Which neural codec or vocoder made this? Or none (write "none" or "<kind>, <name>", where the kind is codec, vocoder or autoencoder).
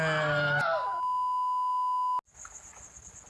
none